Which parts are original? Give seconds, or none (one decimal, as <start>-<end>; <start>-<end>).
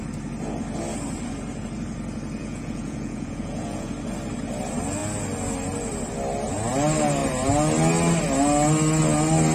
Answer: 0.0-2.4; 3.9-9.5